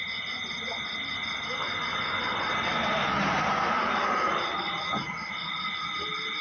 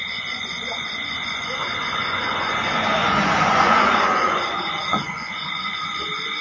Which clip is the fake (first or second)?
second